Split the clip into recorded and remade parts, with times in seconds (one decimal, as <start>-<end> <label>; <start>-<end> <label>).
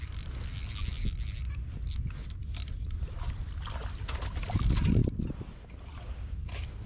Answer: 0.0-6.9 recorded